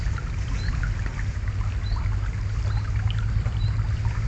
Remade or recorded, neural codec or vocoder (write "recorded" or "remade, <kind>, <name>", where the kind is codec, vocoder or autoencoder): recorded